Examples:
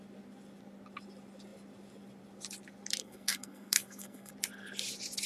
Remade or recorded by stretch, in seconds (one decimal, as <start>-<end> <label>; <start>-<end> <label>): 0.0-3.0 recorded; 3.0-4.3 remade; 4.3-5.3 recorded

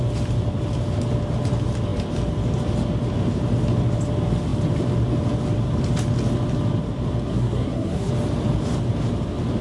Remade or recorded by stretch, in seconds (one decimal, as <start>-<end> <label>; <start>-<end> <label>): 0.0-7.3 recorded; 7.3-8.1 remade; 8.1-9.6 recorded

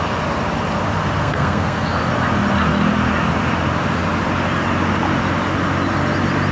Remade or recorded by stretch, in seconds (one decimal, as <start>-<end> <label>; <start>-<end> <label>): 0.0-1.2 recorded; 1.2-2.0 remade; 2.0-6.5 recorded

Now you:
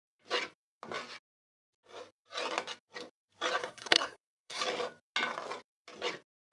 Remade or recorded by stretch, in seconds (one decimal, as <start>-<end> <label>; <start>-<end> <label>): 0.0-3.6 recorded; 3.6-4.6 remade; 4.6-6.5 recorded

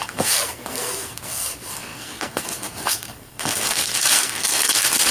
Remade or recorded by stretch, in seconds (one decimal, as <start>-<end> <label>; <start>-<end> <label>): 0.0-5.1 remade

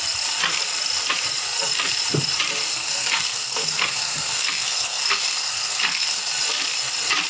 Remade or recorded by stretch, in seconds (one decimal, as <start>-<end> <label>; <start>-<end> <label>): 0.0-2.7 recorded; 2.7-6.3 remade; 6.3-7.3 recorded

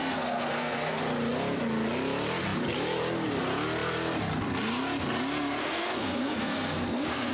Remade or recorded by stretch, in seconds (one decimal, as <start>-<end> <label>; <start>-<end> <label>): 0.0-1.0 remade; 1.0-5.6 recorded; 5.6-7.3 remade